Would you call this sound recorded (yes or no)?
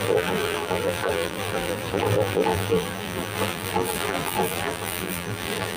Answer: no